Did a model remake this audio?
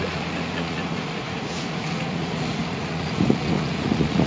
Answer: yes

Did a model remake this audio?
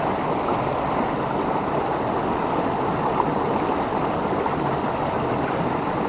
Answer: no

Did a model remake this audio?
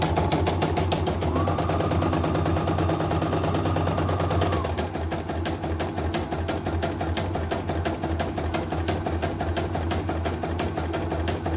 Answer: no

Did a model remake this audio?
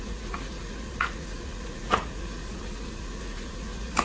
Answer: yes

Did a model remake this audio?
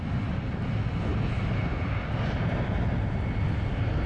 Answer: no